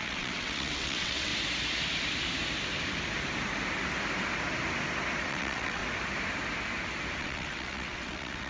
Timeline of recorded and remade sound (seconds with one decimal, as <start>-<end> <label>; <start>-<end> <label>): 0.0-1.3 remade; 1.3-5.3 recorded; 5.3-5.8 remade; 5.8-7.2 recorded; 7.2-8.5 remade